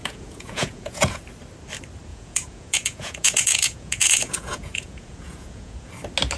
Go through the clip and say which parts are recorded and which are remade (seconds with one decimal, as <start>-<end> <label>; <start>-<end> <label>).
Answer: 0.0-1.2 remade; 1.2-2.1 recorded; 2.1-5.9 remade; 5.9-6.4 recorded